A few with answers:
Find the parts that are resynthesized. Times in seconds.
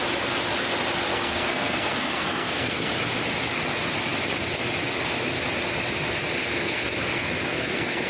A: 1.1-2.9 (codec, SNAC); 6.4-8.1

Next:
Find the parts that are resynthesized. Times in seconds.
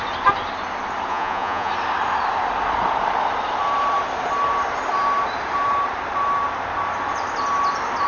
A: 1.1-1.7 (vocoder, Vocos)